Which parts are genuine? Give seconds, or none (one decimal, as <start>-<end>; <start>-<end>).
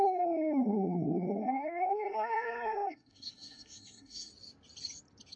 4.3-5.4